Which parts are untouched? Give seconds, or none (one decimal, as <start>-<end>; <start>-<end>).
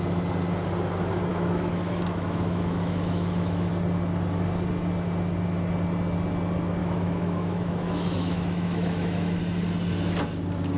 0.0-1.3; 3.7-6.8; 9.4-10.8